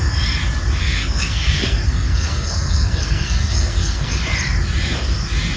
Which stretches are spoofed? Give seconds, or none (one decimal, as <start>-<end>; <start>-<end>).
0.8-4.2